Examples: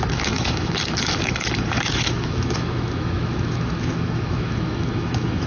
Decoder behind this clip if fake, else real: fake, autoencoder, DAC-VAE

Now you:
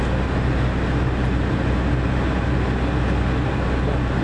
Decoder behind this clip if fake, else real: real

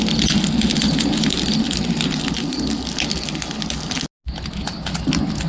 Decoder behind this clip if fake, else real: real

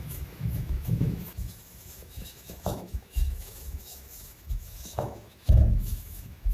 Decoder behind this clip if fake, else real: fake, autoencoder, DAC-VAE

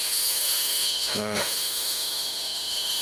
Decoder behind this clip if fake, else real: fake, autoencoder, DAC-VAE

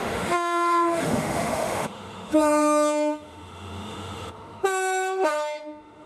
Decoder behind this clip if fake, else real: fake, autoencoder, DAC-VAE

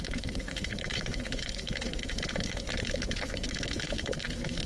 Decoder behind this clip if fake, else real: fake, autoencoder, DAC-VAE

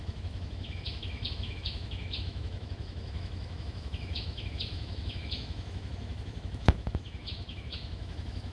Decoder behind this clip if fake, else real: fake, autoencoder, DAC-VAE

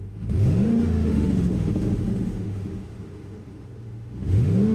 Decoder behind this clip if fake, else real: fake, autoencoder, DAC-VAE